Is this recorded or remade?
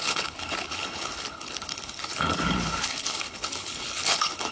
remade